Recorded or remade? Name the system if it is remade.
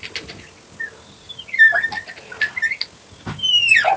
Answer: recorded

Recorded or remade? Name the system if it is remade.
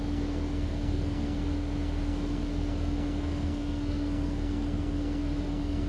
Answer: remade, codec, SNAC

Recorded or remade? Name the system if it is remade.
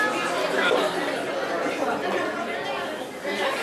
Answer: recorded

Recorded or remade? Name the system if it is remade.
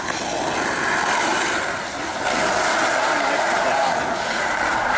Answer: recorded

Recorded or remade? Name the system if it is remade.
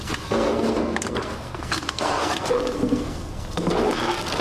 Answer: remade, codec, SNAC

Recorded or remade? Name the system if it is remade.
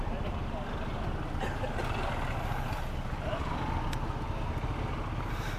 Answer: recorded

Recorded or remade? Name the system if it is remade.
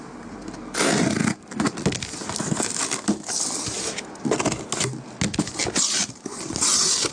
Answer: recorded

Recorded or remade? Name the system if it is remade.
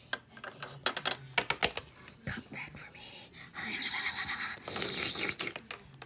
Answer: recorded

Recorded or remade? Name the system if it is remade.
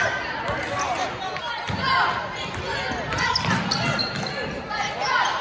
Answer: recorded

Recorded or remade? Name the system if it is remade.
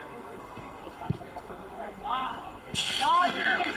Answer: remade, codec, SNAC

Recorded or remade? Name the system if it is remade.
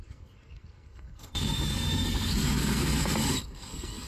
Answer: remade, codec, SNAC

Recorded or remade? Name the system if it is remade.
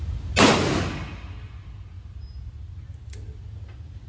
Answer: recorded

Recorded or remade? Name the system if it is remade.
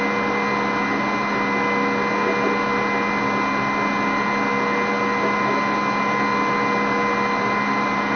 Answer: recorded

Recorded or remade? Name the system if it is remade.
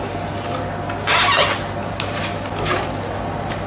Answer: recorded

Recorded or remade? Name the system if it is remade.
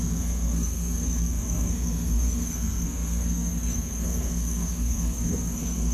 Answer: remade, codec, SNAC